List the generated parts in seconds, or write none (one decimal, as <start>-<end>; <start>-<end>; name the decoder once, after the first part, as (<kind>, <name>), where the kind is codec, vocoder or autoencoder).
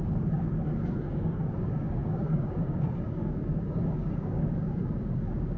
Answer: 0.0-5.6 (codec, DAC)